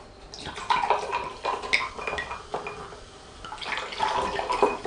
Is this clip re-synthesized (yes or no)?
no